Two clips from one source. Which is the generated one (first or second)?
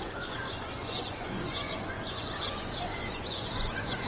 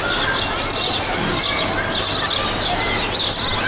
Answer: first